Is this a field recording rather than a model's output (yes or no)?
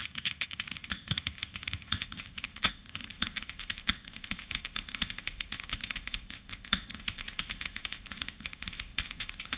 no